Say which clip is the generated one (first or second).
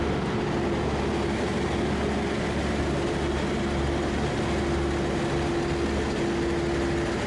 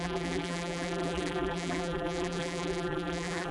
second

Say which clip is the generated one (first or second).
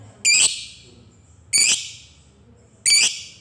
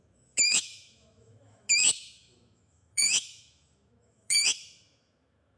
second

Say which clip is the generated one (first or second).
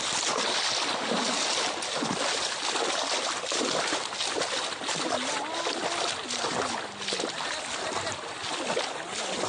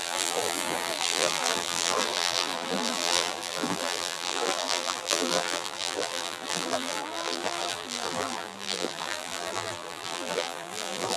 second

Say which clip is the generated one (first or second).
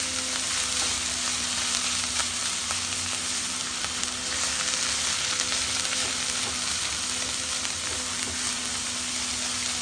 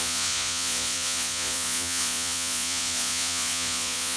second